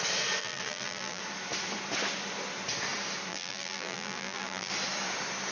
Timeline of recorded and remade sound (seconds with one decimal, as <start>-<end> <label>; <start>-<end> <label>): 0.0-0.4 recorded; 0.4-1.2 remade; 1.2-3.3 recorded; 3.3-4.7 remade; 4.7-5.5 recorded

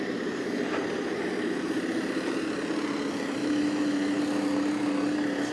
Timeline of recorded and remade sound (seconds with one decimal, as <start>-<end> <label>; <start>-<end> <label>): 0.0-3.4 recorded; 3.4-4.2 remade; 4.2-5.5 recorded

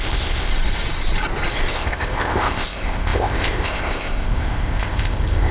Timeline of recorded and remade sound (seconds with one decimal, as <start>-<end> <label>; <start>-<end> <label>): 0.0-0.5 remade; 0.5-1.7 recorded; 1.7-5.5 remade

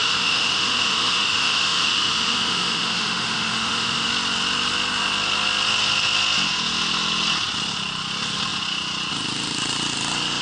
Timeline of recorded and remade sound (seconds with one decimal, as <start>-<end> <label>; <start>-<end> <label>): 0.0-4.1 remade; 4.1-10.4 recorded

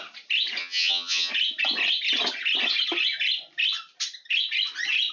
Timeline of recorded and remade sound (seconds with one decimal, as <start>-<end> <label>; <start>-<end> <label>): 0.0-0.6 recorded; 0.6-1.3 remade; 1.3-5.1 recorded